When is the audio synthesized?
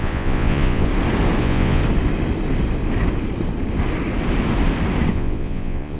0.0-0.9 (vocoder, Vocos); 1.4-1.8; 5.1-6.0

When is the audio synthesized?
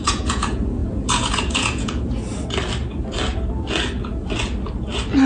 0.0-2.2 (vocoder, Vocos)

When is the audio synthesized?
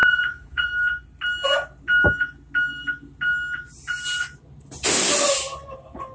0.0-0.7 (vocoder, Vocos)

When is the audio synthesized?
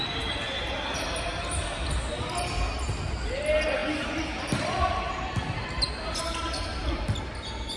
none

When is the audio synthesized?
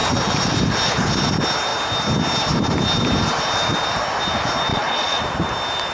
4.7-5.2 (vocoder, Vocos)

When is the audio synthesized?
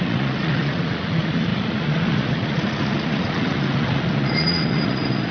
0.0-5.3 (vocoder, Vocos)